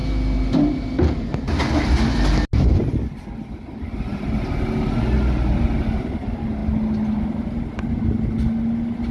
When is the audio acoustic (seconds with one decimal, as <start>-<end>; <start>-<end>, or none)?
0.0-9.1